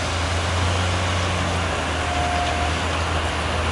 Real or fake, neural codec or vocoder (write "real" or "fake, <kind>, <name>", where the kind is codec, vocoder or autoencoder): real